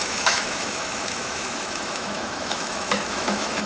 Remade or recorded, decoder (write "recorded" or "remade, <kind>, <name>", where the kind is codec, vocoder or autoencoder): remade, autoencoder, DAC-VAE